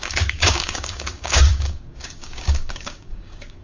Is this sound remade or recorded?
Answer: remade